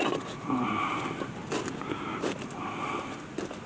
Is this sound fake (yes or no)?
no